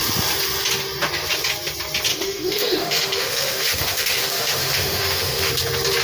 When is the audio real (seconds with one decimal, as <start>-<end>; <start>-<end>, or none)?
0.0-2.1; 5.5-6.0